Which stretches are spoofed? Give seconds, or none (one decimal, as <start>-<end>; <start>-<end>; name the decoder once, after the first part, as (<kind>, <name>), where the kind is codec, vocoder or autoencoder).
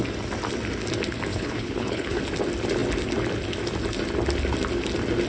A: 1.3-2.2 (codec, HILCodec)